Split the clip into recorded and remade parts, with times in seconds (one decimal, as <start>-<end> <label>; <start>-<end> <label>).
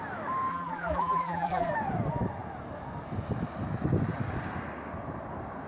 0.0-0.5 recorded; 0.5-1.7 remade; 1.7-5.7 recorded